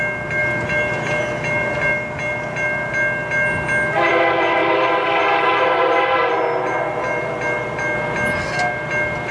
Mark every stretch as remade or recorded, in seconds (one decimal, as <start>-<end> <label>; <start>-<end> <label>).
0.0-9.3 recorded